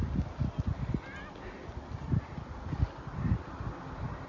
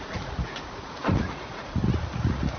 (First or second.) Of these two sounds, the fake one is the second